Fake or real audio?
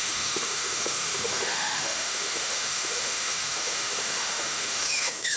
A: fake